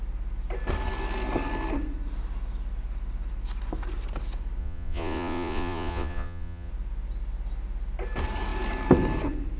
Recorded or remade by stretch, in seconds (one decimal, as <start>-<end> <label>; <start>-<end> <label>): 0.0-4.6 recorded; 4.6-6.7 remade; 6.7-9.6 recorded